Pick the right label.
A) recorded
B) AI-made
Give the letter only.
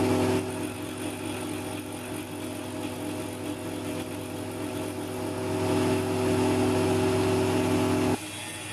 A